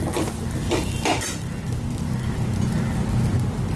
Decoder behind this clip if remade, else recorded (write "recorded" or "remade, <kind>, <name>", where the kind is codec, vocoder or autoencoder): recorded